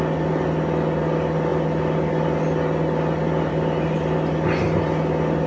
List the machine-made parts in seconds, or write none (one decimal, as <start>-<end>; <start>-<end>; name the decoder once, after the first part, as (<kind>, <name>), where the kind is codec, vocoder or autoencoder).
none